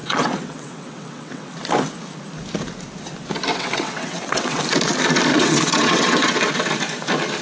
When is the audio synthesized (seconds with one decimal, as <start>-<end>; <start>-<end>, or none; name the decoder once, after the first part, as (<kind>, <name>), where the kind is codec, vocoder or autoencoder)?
0.0-1.5 (vocoder, WaveNeXt); 3.5-4.6; 5.3-6.5